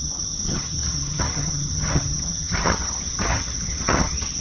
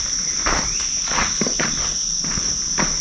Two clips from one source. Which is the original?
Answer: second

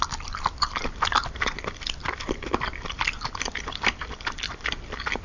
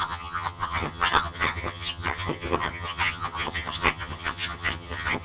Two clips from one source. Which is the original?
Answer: first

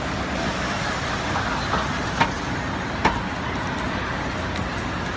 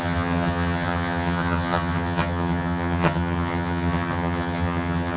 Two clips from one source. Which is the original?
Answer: first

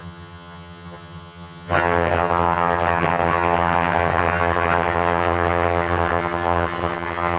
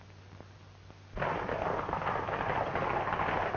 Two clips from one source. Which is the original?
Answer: second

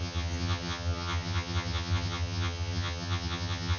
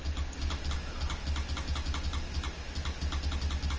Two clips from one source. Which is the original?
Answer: second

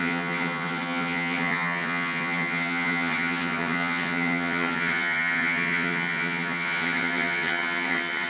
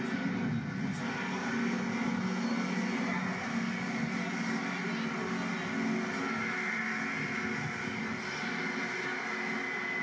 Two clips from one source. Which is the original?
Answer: second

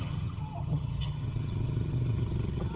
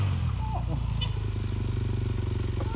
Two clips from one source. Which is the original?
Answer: second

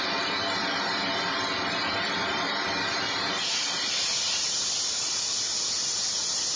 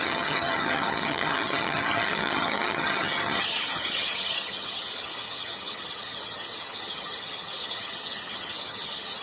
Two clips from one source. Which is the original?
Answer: first